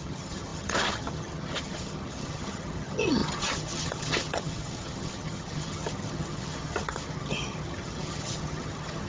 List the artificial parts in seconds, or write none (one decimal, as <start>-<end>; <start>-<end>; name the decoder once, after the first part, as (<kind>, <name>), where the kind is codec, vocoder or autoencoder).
0.0-9.1 (vocoder, HiFi-GAN)